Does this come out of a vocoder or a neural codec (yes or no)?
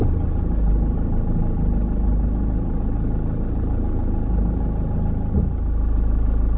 no